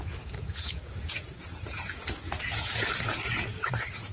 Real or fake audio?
fake